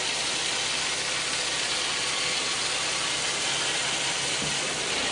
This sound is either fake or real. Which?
real